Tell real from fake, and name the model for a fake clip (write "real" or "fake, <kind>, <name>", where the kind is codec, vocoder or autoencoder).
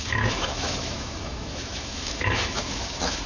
fake, autoencoder, DAC-VAE